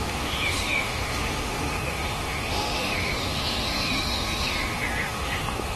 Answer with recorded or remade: remade